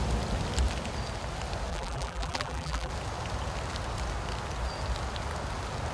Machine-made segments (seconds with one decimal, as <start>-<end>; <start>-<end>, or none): 1.7-2.9